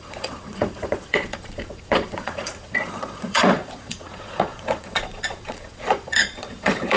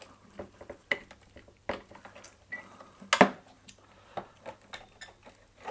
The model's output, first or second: first